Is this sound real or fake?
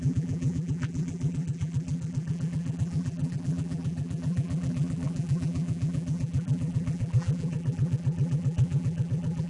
fake